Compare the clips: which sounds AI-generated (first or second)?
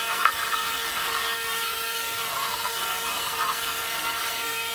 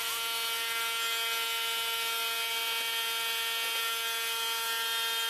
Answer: first